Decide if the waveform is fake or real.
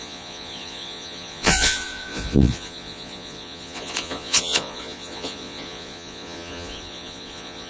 fake